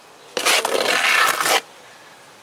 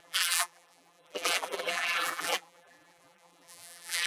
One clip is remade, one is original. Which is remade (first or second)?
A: second